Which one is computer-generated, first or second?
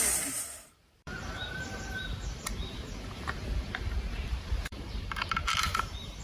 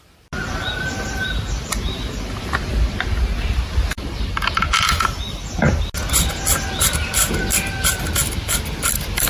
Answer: first